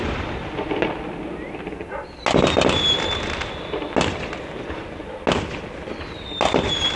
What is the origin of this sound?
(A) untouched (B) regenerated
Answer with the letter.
A